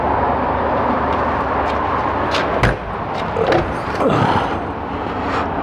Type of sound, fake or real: real